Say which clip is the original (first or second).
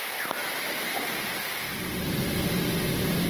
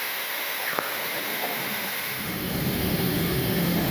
first